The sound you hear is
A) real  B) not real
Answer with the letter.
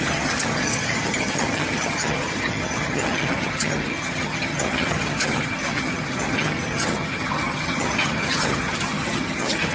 B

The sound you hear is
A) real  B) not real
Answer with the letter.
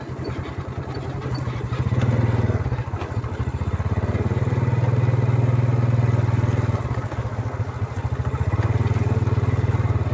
A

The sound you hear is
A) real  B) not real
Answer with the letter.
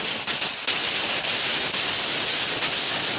A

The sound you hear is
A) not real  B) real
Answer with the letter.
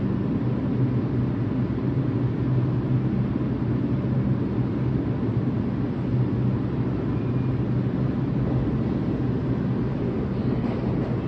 B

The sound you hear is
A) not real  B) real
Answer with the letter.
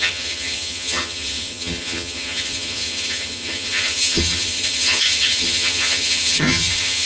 A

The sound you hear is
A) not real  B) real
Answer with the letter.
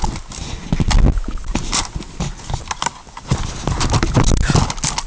B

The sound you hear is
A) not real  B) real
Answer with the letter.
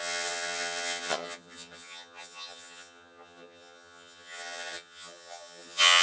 A